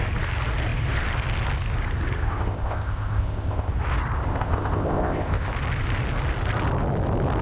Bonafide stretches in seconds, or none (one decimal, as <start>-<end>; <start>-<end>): 0.0-2.2; 3.7-4.3; 5.5-7.4